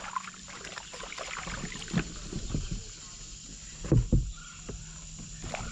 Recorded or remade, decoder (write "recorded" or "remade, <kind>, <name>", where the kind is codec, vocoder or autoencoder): recorded